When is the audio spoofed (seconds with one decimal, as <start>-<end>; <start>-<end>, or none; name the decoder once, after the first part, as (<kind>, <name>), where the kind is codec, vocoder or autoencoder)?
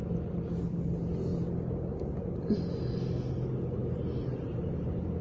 none